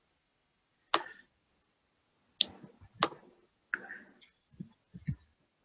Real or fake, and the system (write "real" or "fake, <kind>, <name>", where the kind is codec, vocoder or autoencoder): real